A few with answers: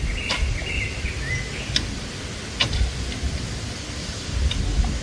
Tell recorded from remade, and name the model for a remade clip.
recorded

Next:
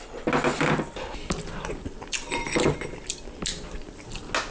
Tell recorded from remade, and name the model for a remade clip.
recorded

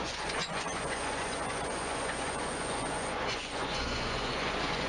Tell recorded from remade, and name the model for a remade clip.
remade, vocoder, Vocos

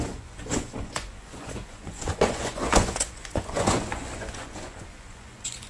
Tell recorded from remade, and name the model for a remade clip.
remade, vocoder, Vocos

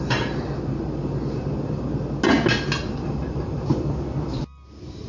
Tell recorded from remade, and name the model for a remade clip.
recorded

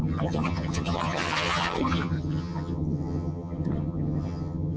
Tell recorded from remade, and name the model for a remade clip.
remade, vocoder, HiFi-GAN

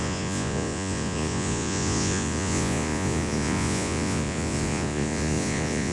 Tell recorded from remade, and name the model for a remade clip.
remade, vocoder, Vocos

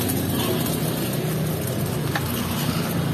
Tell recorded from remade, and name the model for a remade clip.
recorded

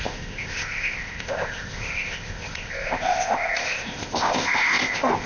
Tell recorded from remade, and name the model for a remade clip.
remade, codec, ZipCodec